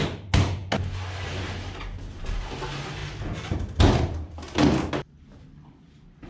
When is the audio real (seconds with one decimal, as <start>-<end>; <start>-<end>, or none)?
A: 0.0-6.3